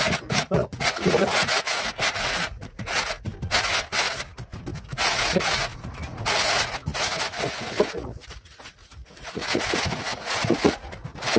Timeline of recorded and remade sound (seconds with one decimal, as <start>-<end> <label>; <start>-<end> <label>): 0.0-3.3 remade; 3.3-4.8 recorded; 4.8-11.4 remade